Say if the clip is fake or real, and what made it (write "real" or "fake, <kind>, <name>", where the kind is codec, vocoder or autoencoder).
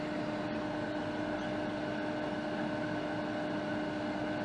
real